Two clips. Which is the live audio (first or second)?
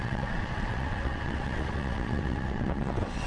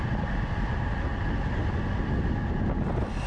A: second